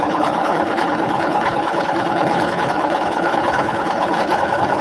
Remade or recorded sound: remade